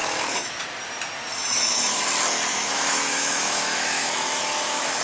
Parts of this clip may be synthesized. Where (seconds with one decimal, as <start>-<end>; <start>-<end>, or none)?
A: 0.0-0.6; 1.4-2.0; 2.5-5.0